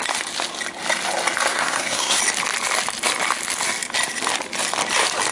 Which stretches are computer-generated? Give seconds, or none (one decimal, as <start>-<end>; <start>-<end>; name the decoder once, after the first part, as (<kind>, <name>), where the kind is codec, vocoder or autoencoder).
1.5-2.2 (codec, SNAC)

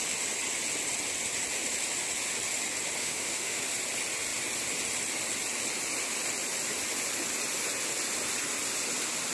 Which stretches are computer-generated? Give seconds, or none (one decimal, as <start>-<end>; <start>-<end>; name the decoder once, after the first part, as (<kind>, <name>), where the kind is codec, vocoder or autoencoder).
3.0-3.6 (autoencoder, DAC-VAE)

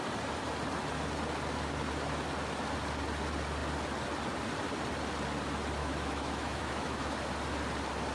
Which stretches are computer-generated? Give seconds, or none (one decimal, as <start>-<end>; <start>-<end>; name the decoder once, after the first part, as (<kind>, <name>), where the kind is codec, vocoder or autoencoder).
5.8-7.1 (autoencoder, DAC-VAE)

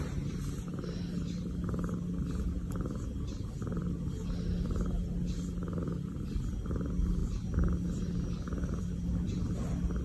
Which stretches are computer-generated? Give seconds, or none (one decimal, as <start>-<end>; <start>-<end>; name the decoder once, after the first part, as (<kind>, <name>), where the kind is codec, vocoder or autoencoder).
none

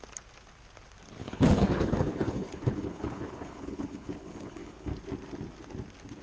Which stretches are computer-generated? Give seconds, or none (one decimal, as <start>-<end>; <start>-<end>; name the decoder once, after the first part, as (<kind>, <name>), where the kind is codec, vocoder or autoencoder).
1.2-4.9 (codec, HILCodec)

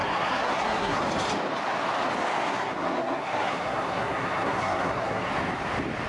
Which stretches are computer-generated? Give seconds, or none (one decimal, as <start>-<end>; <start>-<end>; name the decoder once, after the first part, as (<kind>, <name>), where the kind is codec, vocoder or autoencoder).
0.0-1.0 (codec, SNAC); 2.5-5.3

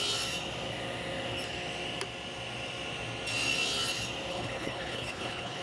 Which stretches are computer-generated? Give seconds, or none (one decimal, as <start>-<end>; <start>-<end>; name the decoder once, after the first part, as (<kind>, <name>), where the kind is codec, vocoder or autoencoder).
4.3-5.6 (codec, HILCodec)